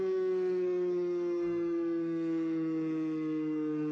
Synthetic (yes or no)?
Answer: yes